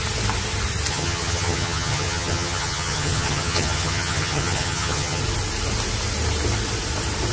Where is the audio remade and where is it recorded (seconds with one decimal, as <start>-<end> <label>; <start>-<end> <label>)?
0.0-0.9 recorded; 0.9-5.2 remade; 5.2-7.3 recorded